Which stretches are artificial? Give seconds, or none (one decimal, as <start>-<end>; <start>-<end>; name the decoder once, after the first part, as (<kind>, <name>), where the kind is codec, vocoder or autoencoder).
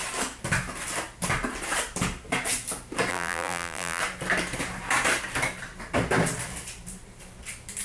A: 3.1-4.0 (vocoder, BigVGAN v2)